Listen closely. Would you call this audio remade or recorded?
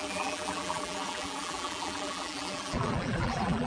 remade